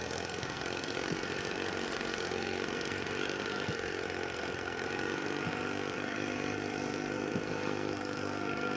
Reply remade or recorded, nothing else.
remade